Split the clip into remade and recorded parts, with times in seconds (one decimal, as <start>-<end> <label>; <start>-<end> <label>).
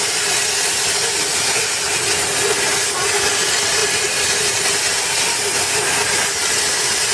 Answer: 0.0-3.8 recorded; 3.8-4.6 remade; 4.6-7.1 recorded